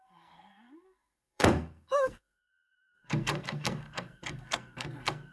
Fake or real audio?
fake